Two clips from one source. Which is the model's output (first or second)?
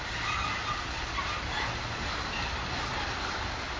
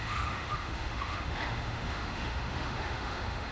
second